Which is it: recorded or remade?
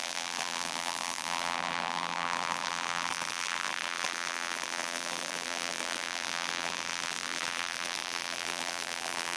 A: remade